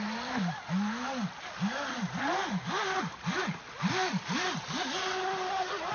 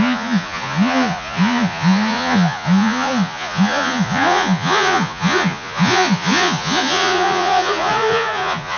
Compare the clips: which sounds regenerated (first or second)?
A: second